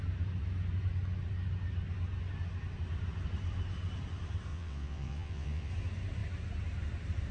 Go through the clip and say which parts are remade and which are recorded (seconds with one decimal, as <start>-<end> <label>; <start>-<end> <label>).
0.0-4.5 recorded; 4.5-5.7 remade; 5.7-7.3 recorded